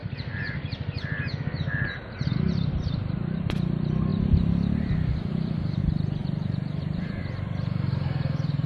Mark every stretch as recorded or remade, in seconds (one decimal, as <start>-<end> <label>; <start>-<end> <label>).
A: 0.0-2.7 recorded; 2.7-8.7 remade